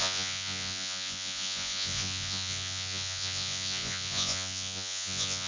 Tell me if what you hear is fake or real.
fake